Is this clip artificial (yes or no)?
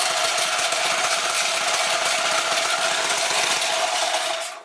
no